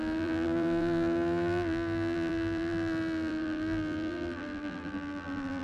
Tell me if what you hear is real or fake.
fake